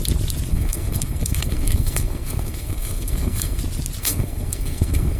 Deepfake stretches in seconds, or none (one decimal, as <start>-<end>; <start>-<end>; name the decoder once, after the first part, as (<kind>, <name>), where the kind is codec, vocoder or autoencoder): 0.5-3.6 (codec, SNAC); 4.0-5.2